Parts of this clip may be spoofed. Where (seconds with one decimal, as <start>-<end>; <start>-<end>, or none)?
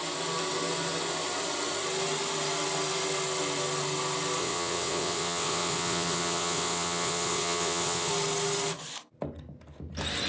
4.4-8.1